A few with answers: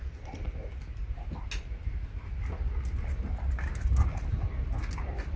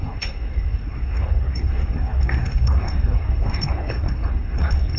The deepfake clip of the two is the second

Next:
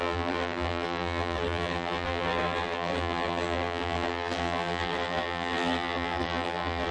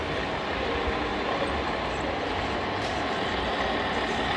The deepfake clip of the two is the first